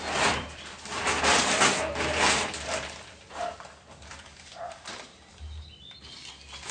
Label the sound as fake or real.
real